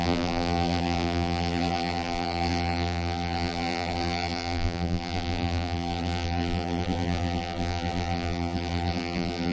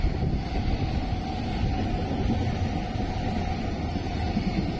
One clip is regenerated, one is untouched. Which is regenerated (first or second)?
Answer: first